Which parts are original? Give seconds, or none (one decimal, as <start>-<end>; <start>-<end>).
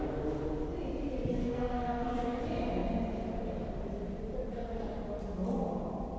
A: 0.0-1.4; 2.4-6.2